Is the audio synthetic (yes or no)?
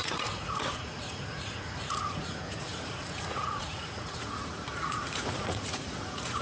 yes